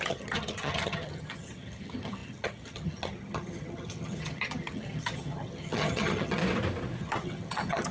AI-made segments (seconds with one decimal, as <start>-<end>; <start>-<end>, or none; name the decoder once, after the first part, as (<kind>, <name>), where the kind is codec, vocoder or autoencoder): 0.0-6.4 (vocoder, HiFi-GAN); 7.0-7.9